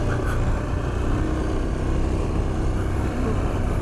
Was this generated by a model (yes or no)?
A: no